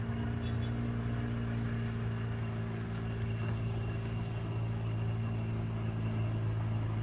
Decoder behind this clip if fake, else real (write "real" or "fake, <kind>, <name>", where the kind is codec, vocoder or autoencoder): real